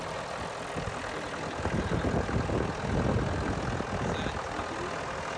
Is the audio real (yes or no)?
yes